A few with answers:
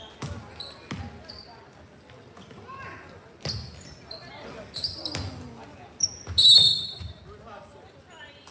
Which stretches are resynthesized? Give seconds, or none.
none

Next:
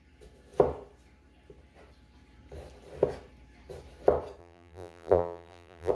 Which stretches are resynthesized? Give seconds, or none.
4.4-5.9 (vocoder, BigVGAN v2)

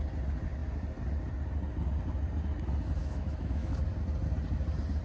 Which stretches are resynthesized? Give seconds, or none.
3.0-3.8 (autoencoder, DAC-VAE)

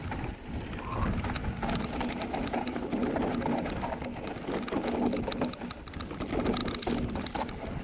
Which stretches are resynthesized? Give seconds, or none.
none

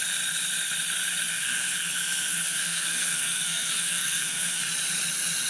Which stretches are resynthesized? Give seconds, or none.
1.3-4.6 (codec, SNAC)

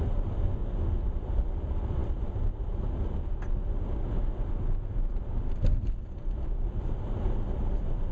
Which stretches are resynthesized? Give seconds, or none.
0.0-0.6 (vocoder, BigVGAN v2); 1.1-2.0; 6.5-8.1